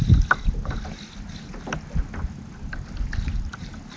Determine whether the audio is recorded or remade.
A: recorded